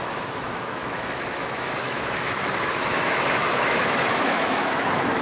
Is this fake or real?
fake